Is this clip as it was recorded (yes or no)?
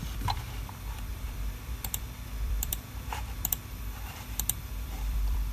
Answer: no